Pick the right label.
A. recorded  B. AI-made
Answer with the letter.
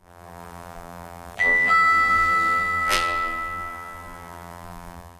B